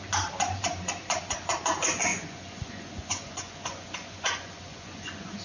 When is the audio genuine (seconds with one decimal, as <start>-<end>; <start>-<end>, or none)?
0.0-2.1